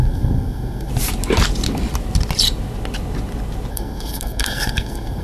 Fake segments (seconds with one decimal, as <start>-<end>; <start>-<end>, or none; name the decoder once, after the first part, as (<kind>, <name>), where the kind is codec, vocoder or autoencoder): 0.0-0.9 (codec, SNAC); 3.7-5.2